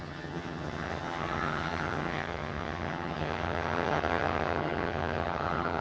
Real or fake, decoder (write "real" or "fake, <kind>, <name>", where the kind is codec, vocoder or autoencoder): fake, vocoder, HiFi-GAN